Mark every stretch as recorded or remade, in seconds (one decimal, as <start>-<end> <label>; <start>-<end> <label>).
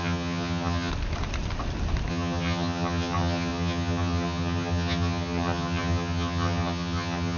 0.0-0.9 remade; 0.9-2.1 recorded; 2.1-7.4 remade